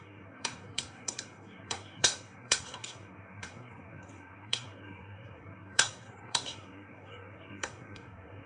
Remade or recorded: remade